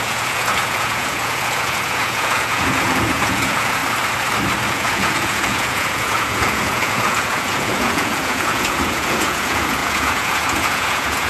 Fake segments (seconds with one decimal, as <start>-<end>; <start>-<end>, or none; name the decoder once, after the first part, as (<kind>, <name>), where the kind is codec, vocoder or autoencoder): 0.0-3.8 (vocoder, Vocos); 4.7-11.3